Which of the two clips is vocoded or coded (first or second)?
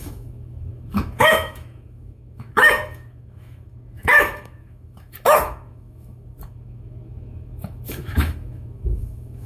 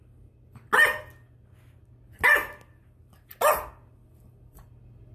first